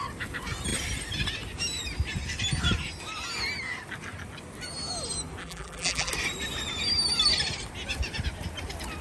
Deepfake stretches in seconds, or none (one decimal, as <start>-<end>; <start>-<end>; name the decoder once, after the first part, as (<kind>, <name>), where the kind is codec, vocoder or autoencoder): 5.4-6.1 (vocoder, BigVGAN v2)

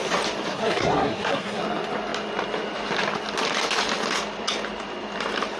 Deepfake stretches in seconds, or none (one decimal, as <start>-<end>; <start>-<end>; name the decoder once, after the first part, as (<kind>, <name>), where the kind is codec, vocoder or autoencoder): 0.5-1.6 (codec, SNAC)

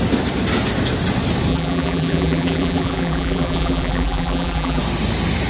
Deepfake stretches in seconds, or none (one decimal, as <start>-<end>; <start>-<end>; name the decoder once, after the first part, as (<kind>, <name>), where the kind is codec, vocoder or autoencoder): 1.5-4.8 (vocoder, BigVGAN v2)

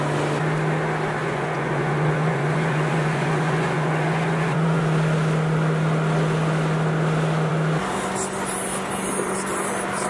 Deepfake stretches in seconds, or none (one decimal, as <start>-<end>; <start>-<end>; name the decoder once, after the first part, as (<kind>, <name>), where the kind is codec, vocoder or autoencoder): 1.2-4.8 (vocoder, Vocos)